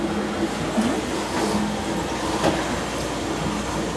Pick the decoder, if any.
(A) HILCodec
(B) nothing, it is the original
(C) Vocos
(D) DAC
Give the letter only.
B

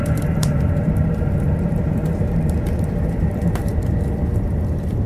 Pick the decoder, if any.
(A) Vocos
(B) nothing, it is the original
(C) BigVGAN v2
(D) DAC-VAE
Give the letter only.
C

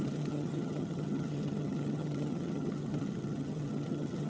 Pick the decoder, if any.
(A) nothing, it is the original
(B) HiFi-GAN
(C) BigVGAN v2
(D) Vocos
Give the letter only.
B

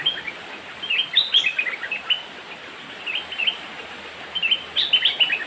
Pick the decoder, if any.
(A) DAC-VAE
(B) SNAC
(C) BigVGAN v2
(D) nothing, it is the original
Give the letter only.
D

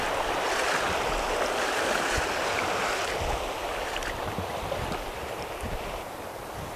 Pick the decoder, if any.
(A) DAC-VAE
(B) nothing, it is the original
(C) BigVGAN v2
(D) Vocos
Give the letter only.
B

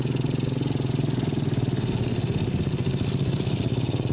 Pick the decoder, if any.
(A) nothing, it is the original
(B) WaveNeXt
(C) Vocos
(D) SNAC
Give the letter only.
A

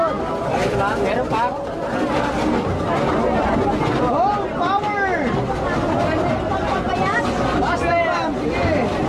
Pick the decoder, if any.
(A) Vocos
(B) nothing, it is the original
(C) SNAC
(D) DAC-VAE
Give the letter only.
B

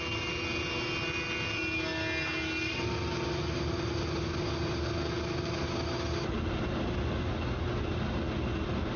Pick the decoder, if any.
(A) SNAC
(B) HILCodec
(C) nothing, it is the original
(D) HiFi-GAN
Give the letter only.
C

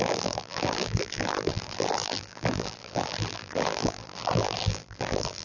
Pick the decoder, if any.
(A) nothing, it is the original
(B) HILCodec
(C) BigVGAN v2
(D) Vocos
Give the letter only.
C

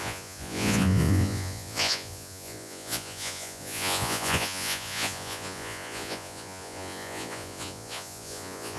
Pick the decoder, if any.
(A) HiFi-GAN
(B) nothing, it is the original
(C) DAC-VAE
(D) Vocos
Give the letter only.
D